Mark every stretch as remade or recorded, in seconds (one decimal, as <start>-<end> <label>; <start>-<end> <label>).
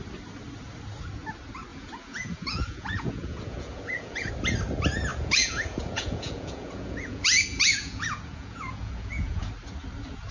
0.0-1.7 recorded; 1.7-4.3 remade; 4.3-5.1 recorded; 5.1-9.5 remade; 9.5-10.3 recorded